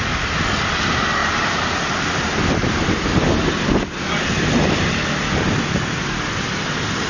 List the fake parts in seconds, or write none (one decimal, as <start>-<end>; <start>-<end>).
1.2-3.2